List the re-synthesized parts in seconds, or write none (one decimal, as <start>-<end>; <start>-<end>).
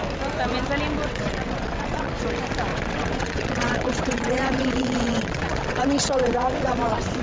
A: 1.0-2.2; 2.7-7.2